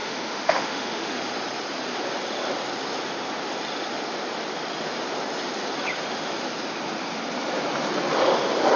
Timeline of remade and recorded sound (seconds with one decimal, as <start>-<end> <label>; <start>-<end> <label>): 0.0-1.1 remade; 1.1-8.8 recorded